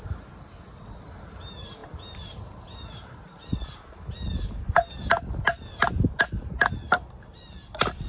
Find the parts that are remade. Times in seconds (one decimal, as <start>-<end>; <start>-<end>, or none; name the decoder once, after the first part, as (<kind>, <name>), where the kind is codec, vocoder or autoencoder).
none

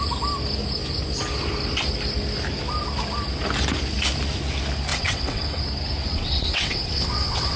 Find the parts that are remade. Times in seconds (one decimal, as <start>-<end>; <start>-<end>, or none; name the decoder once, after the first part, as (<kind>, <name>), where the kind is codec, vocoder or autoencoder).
4.9-5.6 (vocoder, WaveNeXt); 6.0-7.6

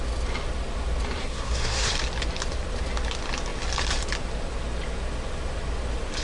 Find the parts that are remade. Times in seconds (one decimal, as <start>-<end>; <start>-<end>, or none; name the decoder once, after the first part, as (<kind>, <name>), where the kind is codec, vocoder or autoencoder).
1.2-1.9 (codec, SNAC)

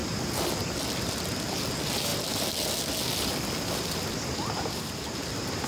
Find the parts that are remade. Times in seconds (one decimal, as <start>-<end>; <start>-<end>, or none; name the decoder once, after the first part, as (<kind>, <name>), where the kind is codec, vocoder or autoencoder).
none